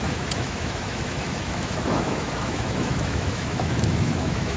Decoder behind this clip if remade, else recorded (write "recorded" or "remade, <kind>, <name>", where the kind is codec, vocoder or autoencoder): remade, autoencoder, DAC-VAE